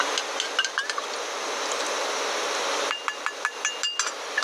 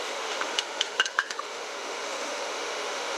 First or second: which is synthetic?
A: second